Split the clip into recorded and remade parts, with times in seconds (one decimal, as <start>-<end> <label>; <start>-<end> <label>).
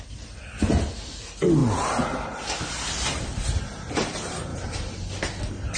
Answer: 0.0-5.8 recorded